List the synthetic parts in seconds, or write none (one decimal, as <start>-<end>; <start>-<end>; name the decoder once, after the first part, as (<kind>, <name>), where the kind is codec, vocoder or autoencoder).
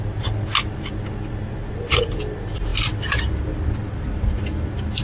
none